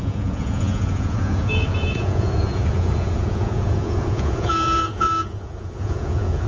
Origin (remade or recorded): remade